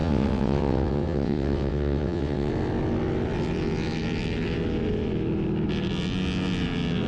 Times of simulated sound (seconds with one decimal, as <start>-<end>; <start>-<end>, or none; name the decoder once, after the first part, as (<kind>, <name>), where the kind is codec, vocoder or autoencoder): 0.0-2.5 (vocoder, WaveNeXt)